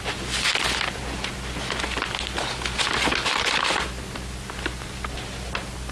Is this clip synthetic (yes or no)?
no